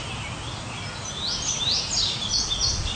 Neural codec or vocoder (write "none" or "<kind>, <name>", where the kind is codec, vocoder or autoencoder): none